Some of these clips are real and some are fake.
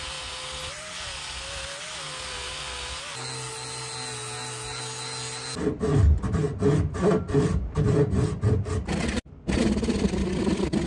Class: real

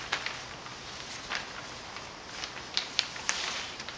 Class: real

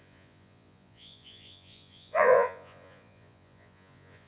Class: fake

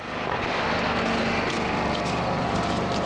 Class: real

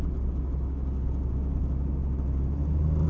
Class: real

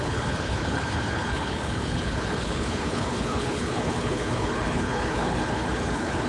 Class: fake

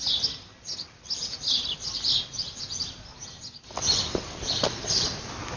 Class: real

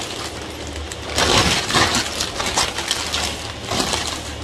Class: real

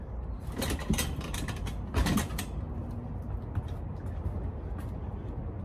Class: real